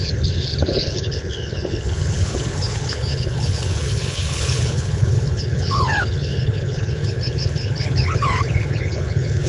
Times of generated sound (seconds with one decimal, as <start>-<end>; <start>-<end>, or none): 0.0-9.5